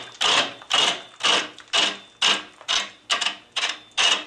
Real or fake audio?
real